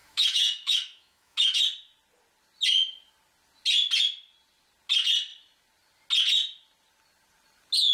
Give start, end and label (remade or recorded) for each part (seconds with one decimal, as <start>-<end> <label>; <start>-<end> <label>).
0.0-1.6 remade; 1.6-7.9 recorded